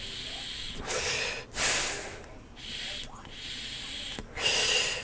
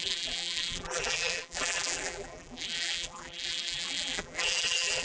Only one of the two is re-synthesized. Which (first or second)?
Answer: second